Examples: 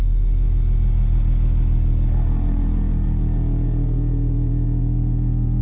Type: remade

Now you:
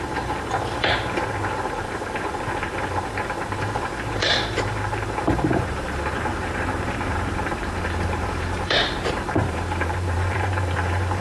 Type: remade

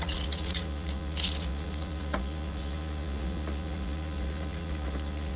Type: remade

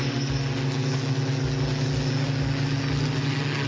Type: recorded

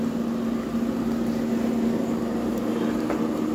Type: recorded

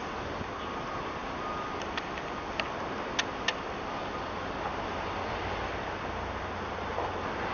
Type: recorded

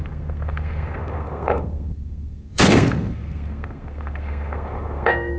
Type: remade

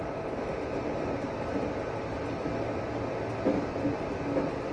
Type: recorded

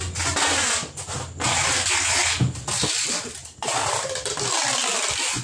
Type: recorded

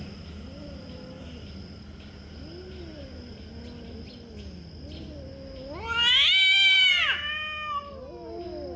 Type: recorded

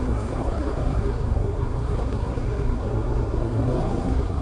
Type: remade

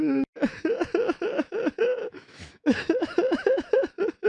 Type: remade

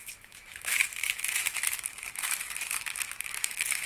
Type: remade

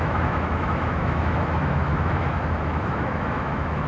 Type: remade